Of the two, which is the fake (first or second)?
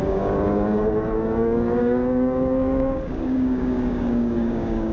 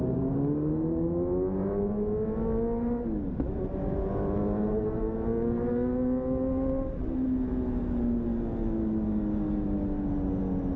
first